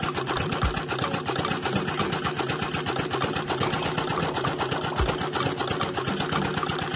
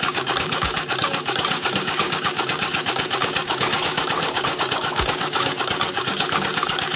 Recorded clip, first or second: first